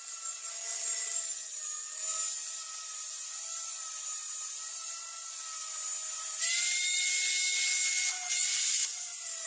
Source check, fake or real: real